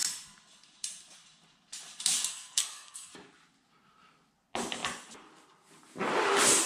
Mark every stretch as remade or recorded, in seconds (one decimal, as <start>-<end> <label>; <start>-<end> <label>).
0.0-2.3 recorded; 2.3-3.1 remade; 3.1-6.7 recorded